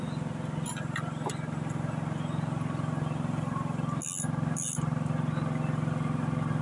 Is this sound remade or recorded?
recorded